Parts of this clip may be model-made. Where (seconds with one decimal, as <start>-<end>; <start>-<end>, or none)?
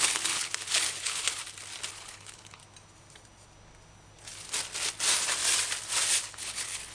0.0-1.4; 1.9-2.6; 6.3-6.9